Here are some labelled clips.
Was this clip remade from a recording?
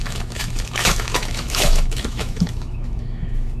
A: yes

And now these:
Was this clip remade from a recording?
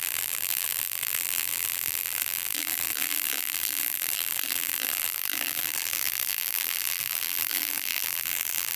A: yes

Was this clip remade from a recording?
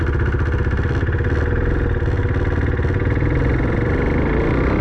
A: no